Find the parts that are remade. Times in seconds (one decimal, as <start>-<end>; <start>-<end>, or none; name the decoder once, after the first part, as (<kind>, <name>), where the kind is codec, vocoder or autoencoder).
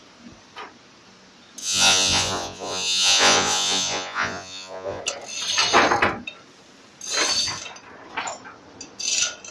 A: 1.6-5.0 (vocoder, Vocos)